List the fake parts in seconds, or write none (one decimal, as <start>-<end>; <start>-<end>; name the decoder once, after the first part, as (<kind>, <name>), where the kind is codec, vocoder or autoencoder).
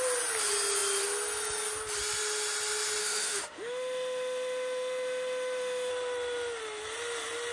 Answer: 3.0-5.9 (autoencoder, DAC-VAE)